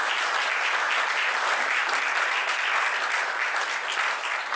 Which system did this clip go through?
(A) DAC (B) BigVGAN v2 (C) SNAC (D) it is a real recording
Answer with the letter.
D